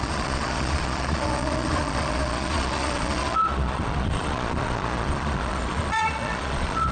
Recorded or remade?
remade